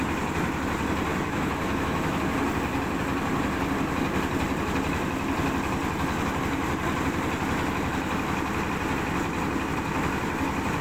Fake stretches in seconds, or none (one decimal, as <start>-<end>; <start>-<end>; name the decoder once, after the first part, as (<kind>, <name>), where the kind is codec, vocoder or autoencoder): 1.1-2.2 (autoencoder, DAC-VAE)